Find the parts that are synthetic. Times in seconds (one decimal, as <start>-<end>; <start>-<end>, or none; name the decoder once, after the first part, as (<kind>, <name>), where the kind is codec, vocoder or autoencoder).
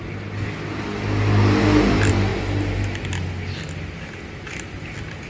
none